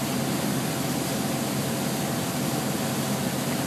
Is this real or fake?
real